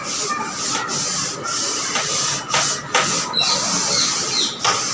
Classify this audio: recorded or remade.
recorded